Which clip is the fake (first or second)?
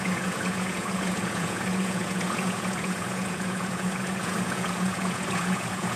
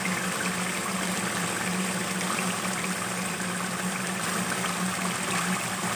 first